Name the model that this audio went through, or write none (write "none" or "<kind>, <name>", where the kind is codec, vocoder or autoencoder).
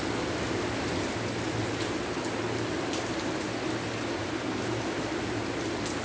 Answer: none